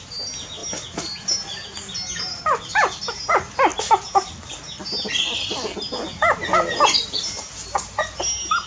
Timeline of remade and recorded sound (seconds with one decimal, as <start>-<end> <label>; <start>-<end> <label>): 0.0-8.7 recorded